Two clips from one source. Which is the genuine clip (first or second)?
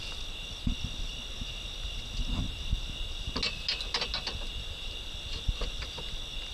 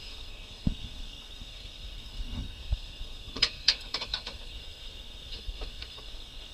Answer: first